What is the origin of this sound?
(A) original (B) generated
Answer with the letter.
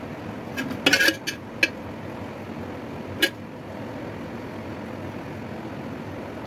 A